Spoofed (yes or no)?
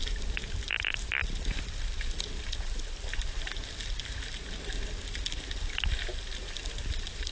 no